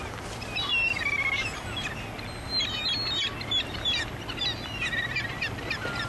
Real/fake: real